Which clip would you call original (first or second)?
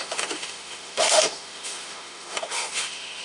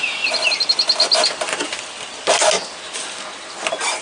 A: second